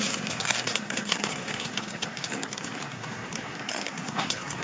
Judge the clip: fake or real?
fake